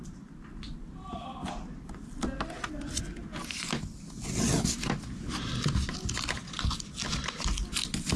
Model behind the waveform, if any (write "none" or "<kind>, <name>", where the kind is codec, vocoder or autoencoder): none